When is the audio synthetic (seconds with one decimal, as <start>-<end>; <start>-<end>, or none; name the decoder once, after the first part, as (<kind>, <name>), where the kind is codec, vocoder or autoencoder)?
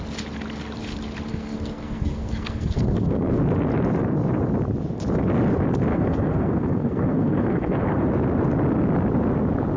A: 1.3-3.4 (codec, SNAC); 5.9-8.1